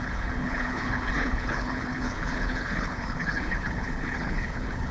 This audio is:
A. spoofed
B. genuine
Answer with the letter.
A